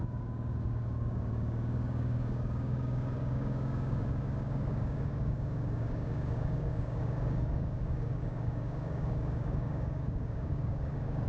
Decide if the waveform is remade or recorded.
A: remade